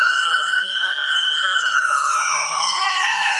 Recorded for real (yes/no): no